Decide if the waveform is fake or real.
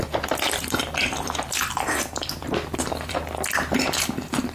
fake